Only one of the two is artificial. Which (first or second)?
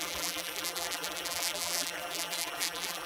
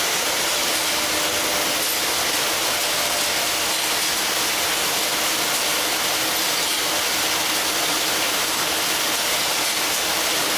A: first